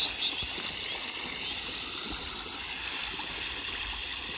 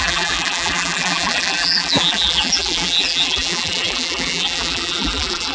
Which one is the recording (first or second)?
first